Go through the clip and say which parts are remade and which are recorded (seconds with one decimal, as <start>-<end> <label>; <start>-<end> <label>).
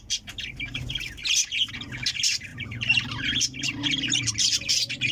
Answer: 0.0-2.5 recorded; 2.5-3.1 remade; 3.1-5.1 recorded